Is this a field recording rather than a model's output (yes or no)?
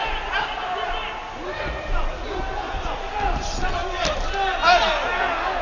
yes